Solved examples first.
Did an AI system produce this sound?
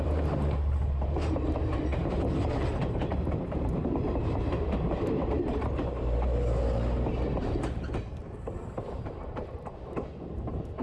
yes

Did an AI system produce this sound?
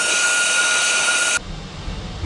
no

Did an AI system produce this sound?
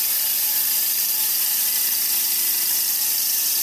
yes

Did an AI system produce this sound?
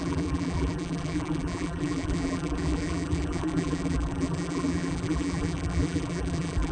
yes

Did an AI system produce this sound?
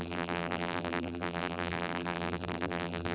yes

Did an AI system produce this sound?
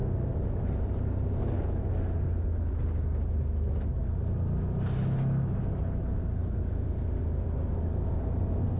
no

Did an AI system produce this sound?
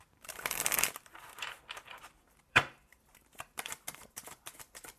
yes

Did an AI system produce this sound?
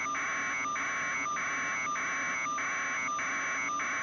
no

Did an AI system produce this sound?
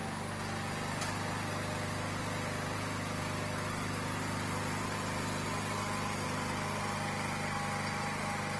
no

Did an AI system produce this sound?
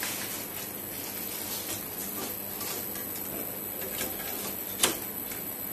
no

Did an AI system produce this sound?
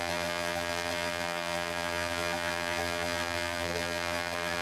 yes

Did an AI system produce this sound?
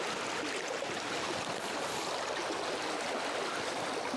no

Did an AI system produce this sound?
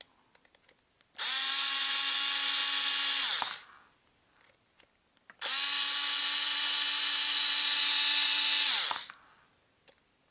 no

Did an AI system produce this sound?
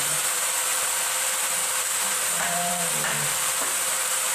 yes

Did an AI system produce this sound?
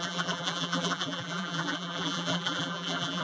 yes